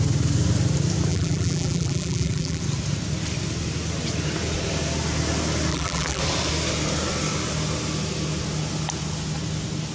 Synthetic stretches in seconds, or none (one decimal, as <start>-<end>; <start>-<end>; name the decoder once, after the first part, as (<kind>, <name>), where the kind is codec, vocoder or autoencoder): 1.1-2.6 (vocoder, BigVGAN v2); 5.7-6.2